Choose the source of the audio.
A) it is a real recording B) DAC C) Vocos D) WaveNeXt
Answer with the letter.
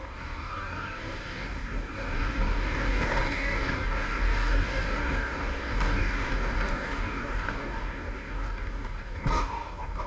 B